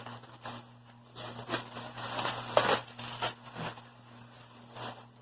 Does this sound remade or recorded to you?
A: recorded